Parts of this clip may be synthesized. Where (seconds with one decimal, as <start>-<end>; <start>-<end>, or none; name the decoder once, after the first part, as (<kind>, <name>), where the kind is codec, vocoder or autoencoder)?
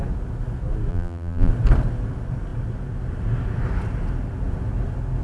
0.9-1.5 (vocoder, BigVGAN v2)